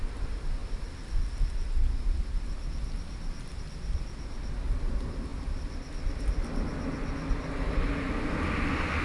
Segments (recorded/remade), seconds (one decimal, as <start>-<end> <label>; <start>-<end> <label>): 0.0-9.0 recorded